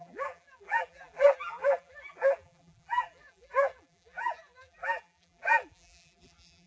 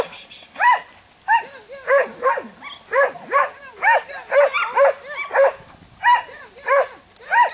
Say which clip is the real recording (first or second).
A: second